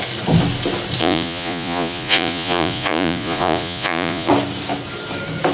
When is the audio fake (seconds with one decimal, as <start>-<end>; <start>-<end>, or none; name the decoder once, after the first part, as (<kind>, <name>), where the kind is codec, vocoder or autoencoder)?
1.0-4.3 (vocoder, Vocos)